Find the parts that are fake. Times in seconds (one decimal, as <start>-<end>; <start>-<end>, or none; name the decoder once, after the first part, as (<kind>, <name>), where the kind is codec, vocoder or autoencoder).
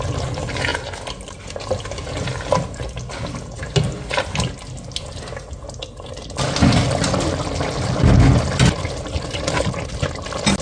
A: none